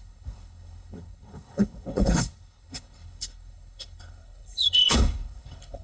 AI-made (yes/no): yes